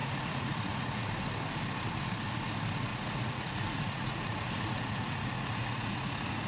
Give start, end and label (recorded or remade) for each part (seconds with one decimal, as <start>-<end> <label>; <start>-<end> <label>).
0.0-1.1 remade; 1.1-2.9 recorded; 2.9-6.5 remade